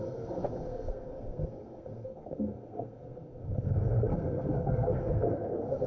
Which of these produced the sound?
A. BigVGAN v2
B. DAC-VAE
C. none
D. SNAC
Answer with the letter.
D